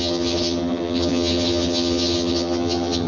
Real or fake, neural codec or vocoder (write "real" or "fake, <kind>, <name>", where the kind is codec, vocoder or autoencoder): fake, vocoder, HiFi-GAN